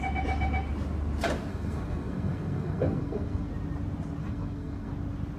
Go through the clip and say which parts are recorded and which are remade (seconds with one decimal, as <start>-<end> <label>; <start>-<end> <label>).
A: 0.0-1.5 recorded; 1.5-3.5 remade; 3.5-4.2 recorded; 4.2-4.9 remade; 4.9-5.4 recorded